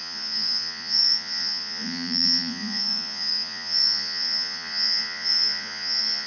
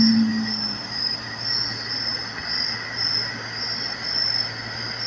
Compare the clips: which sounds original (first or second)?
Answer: second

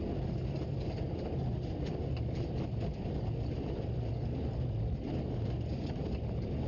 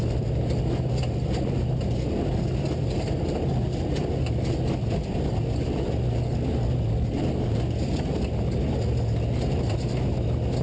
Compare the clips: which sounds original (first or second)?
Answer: second